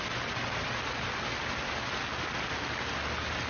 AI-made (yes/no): no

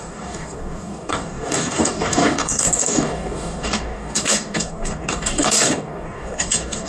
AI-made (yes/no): yes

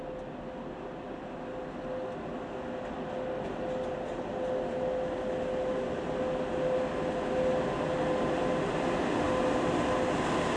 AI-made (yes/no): no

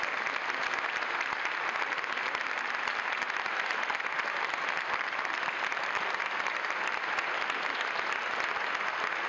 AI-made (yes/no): no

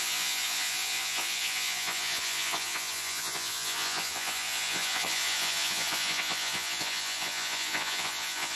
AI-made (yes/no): yes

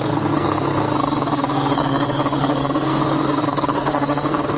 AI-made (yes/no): yes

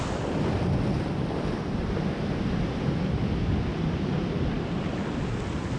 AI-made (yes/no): no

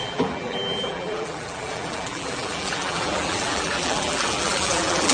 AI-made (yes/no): yes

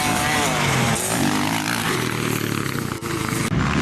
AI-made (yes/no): no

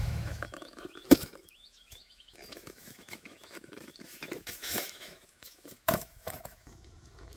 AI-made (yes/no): yes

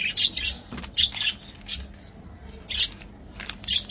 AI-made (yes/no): no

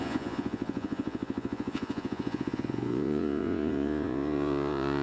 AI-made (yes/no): yes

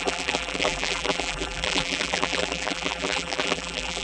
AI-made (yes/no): yes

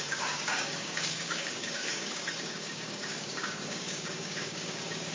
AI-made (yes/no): yes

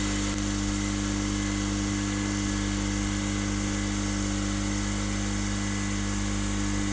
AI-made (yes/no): no